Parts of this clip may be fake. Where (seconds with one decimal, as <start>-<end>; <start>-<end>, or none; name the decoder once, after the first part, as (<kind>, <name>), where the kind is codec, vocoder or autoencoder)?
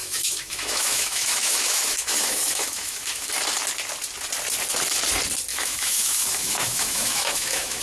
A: 0.0-3.3 (autoencoder, DAC-VAE); 5.5-7.8